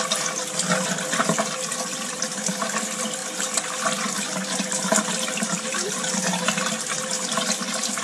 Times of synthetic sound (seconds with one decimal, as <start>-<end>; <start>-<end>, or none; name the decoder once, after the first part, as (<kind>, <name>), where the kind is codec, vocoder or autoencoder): none